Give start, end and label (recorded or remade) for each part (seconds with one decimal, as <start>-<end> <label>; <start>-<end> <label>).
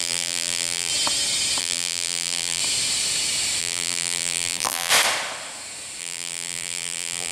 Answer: 0.0-0.9 remade; 0.9-1.6 recorded; 1.6-2.6 remade; 2.6-3.6 recorded; 3.6-4.9 remade; 4.9-6.0 recorded; 6.0-7.3 remade